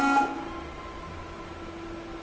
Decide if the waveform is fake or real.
real